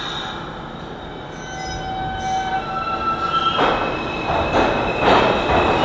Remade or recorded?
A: recorded